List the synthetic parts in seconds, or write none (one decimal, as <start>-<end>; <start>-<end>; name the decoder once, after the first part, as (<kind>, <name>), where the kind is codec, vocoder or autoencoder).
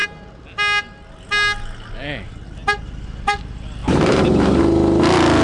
3.8-4.6 (vocoder, BigVGAN v2)